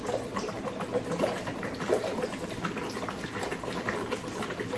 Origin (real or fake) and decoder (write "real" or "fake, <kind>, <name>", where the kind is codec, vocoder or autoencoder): real